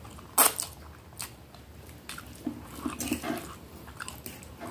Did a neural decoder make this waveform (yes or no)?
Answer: no